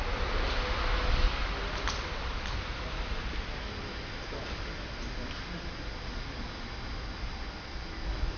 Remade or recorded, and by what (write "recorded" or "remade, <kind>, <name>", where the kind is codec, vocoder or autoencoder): recorded